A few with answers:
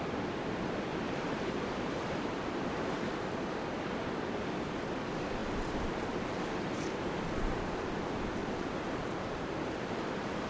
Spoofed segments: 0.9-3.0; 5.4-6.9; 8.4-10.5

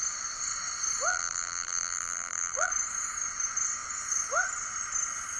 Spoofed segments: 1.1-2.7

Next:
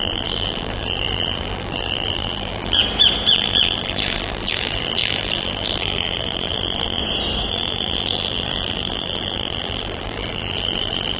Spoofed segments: 0.0-2.8; 3.3-7.0; 7.5-11.2

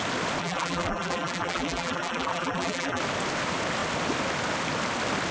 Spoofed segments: 0.4-3.0